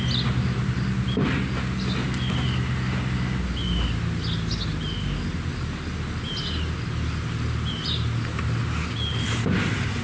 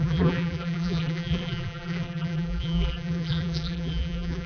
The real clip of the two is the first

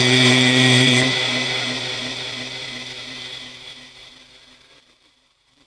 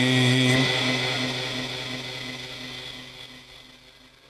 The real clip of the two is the second